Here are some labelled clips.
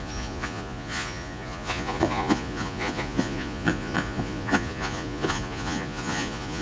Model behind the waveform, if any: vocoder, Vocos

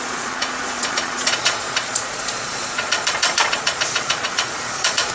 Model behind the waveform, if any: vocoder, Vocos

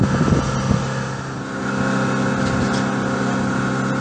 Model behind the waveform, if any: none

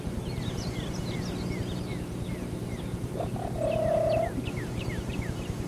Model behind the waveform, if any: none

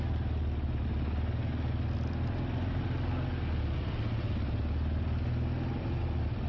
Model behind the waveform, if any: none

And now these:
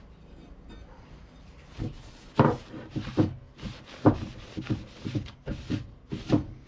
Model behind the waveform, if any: none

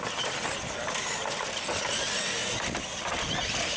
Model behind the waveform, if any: none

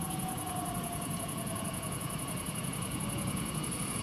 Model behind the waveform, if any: vocoder, Vocos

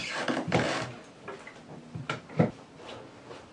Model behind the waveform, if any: none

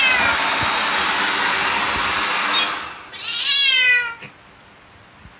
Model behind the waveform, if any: none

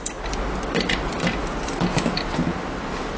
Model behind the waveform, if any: none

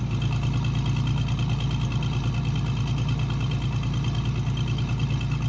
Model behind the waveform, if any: none